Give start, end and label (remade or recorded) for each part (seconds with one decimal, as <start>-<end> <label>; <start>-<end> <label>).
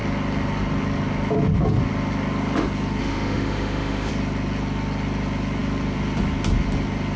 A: 0.0-3.0 recorded; 3.0-4.1 remade; 4.1-7.2 recorded